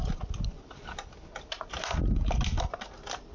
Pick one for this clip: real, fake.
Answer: real